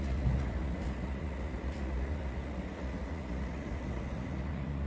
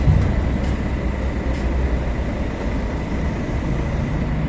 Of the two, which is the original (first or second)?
second